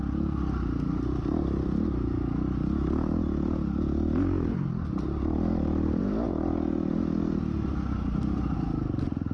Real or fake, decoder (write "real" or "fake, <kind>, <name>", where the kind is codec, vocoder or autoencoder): real